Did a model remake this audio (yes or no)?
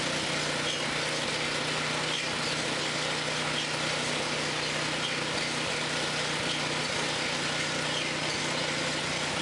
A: no